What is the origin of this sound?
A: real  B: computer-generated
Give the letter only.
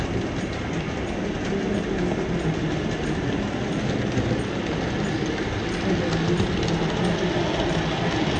A